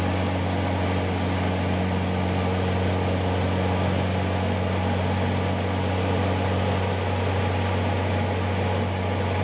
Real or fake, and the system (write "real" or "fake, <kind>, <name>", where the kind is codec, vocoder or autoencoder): real